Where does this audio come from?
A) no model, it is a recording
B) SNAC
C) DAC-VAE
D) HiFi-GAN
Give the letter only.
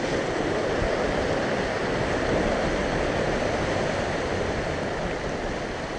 A